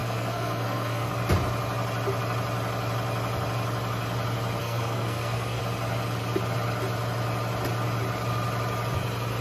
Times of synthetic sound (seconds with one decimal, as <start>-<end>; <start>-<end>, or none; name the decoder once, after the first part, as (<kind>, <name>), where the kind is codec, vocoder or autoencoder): 0.0-1.1 (codec, SNAC); 4.6-5.6